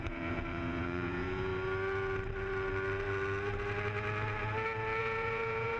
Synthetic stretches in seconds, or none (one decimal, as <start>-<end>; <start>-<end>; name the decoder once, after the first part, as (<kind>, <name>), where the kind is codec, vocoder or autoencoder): 0.0-1.5 (vocoder, Vocos); 5.0-5.8